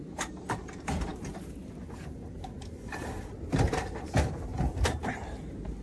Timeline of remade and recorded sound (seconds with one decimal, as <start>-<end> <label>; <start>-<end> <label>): 0.0-4.5 remade; 4.5-5.0 recorded; 5.0-5.8 remade

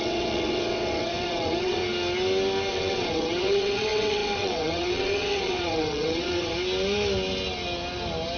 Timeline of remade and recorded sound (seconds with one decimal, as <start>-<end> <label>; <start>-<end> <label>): 0.0-1.8 remade; 1.8-2.7 recorded; 2.7-6.5 remade; 6.5-8.4 recorded

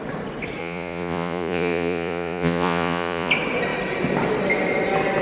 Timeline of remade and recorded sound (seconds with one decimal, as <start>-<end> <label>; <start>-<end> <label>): 0.0-0.6 recorded; 0.6-3.3 remade; 3.3-5.2 recorded